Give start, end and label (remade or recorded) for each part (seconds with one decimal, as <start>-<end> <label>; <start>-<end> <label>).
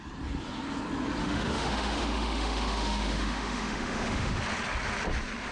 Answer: 0.0-1.2 recorded; 1.2-4.4 remade; 4.4-5.5 recorded